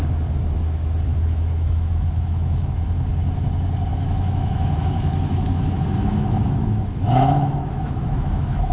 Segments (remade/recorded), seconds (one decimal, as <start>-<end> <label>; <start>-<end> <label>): 0.0-1.1 recorded; 1.1-2.9 remade; 2.9-3.9 recorded; 3.9-8.7 remade